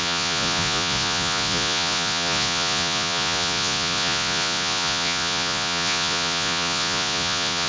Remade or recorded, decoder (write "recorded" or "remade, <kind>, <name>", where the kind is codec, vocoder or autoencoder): remade, vocoder, Vocos